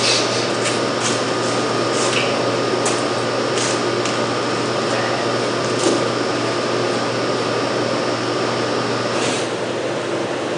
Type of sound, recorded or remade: recorded